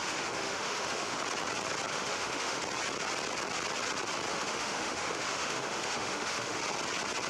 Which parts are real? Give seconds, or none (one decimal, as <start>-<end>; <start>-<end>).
1.2-1.9; 2.6-4.3; 6.6-7.3